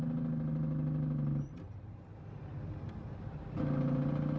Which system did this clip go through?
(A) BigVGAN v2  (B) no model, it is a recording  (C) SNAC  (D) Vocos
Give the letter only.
B